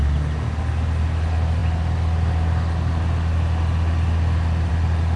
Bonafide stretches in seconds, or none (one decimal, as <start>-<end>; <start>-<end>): 0.0-5.2